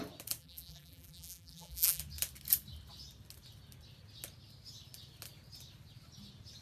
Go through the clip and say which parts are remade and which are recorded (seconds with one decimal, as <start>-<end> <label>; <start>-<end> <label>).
0.0-0.4 recorded; 0.4-2.0 remade; 2.0-6.6 recorded